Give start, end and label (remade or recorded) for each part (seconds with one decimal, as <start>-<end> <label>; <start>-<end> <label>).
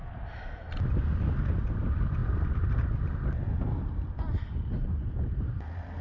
0.0-2.2 recorded; 2.2-3.4 remade; 3.4-6.0 recorded